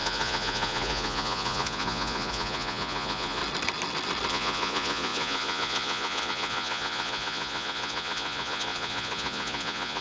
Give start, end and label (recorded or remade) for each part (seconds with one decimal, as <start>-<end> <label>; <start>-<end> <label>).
0.0-3.4 remade; 3.4-4.3 recorded; 4.3-10.0 remade

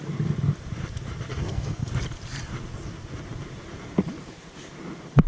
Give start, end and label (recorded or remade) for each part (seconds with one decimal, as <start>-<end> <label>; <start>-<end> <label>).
0.0-1.3 recorded; 1.3-1.9 remade; 1.9-5.3 recorded